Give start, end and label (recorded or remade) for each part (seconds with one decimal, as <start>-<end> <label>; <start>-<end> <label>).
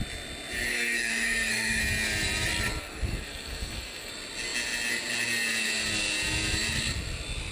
0.0-0.7 recorded; 0.7-1.8 remade; 1.8-2.8 recorded; 2.8-4.1 remade; 4.1-7.5 recorded